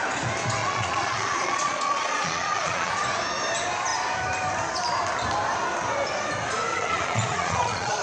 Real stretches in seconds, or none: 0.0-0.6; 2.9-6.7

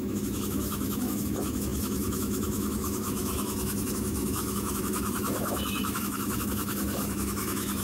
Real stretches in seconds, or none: none